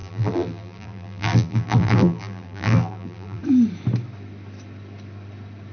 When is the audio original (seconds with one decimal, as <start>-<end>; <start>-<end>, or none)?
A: 3.4-5.7